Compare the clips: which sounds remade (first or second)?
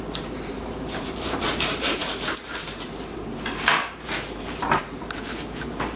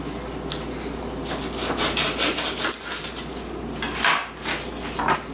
first